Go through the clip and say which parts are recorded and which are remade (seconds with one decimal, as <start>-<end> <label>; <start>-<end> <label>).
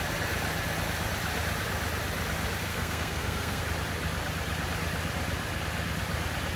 0.0-2.7 recorded; 2.7-3.6 remade; 3.6-6.6 recorded